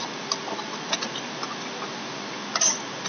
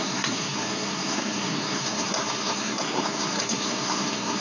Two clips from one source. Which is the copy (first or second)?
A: second